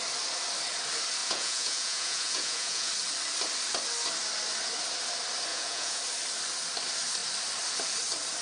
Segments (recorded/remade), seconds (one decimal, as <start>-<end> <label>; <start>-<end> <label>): 0.0-1.2 recorded; 1.2-2.9 remade; 2.9-5.5 recorded; 5.5-6.0 remade; 6.0-8.4 recorded